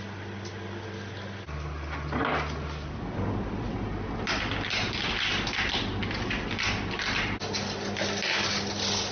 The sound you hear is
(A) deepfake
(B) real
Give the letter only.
B